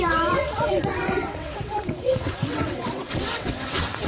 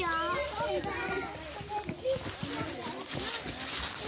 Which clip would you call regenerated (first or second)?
first